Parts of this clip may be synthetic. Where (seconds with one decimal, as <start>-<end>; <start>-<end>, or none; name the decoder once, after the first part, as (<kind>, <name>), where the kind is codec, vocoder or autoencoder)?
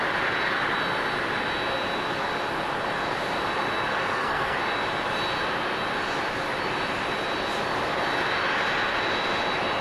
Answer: 3.9-4.6 (codec, SNAC)